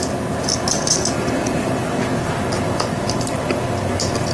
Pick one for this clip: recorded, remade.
recorded